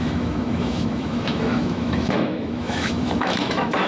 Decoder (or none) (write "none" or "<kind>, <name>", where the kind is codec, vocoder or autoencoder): autoencoder, DAC-VAE